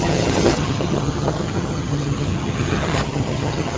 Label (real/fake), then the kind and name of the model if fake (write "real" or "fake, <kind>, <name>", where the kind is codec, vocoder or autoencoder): fake, vocoder, HiFi-GAN